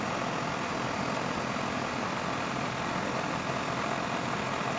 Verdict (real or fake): real